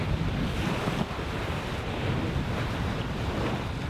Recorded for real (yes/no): yes